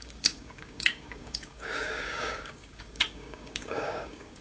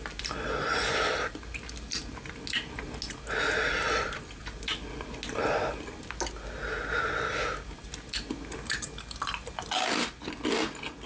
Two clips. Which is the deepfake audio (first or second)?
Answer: first